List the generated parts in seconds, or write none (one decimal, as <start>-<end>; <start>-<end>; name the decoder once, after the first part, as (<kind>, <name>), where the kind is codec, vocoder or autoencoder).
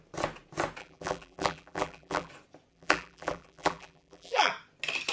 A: 0.8-2.3 (vocoder, BigVGAN v2); 2.7-4.5